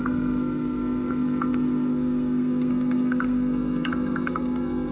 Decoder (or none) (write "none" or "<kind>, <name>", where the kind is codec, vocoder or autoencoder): codec, SNAC